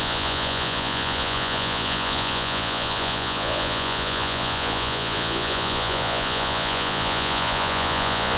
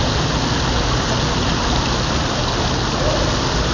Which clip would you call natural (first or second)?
second